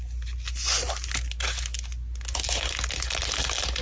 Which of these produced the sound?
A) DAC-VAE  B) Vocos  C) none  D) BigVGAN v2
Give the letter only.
C